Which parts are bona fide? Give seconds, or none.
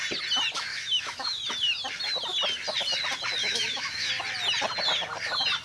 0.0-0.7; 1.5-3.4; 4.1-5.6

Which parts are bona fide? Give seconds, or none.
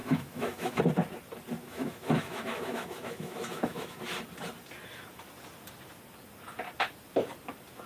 0.8-1.6; 4.0-7.9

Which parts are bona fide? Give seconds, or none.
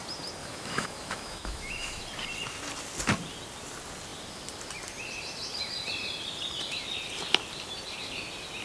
0.0-0.4; 2.0-8.6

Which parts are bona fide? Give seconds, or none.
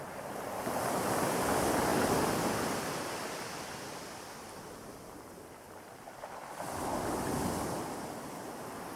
0.0-9.0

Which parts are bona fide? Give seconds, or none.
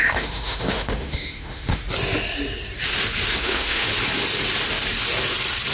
1.8-3.4; 3.9-5.7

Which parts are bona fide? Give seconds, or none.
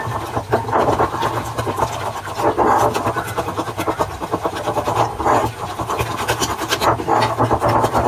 0.0-8.1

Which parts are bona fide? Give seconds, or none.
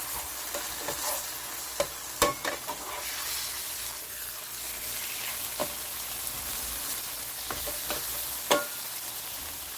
0.0-9.8